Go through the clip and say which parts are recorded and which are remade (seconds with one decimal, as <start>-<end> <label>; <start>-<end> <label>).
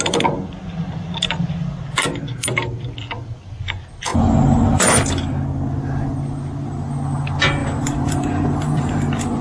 0.0-7.6 recorded; 7.6-9.0 remade; 9.0-9.4 recorded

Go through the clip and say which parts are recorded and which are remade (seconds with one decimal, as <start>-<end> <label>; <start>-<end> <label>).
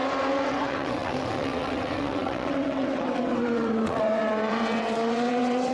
0.0-0.5 recorded; 0.5-5.7 remade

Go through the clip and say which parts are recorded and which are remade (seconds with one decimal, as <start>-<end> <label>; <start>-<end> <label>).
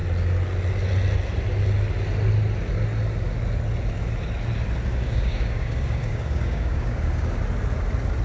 0.0-4.9 recorded; 4.9-7.4 remade; 7.4-8.2 recorded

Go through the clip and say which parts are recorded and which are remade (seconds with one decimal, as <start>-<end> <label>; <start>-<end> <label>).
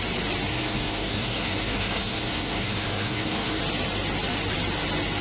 0.0-0.5 recorded; 0.5-3.6 remade; 3.6-5.2 recorded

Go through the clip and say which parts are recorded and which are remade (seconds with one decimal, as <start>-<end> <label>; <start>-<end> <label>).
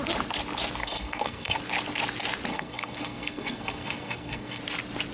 0.0-0.8 recorded; 0.8-1.6 remade; 1.6-2.5 recorded; 2.5-4.6 remade; 4.6-5.1 recorded